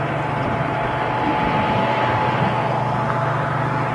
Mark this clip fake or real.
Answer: real